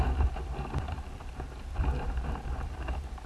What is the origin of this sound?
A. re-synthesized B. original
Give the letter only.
A